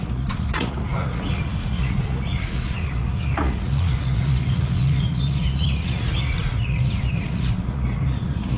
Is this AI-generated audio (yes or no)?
yes